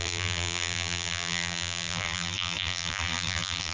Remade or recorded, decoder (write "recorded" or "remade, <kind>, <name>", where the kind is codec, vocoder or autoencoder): remade, vocoder, BigVGAN v2